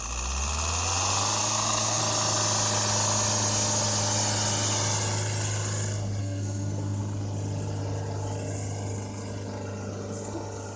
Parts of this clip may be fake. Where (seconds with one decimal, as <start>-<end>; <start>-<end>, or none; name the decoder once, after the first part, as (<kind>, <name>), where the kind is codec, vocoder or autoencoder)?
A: 1.4-2.0 (codec, SNAC); 6.2-7.0